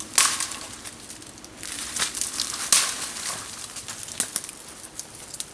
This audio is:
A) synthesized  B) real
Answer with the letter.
B